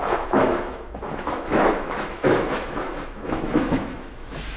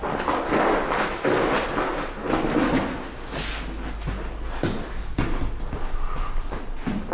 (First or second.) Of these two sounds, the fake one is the first